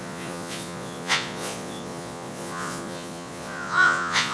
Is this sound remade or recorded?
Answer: remade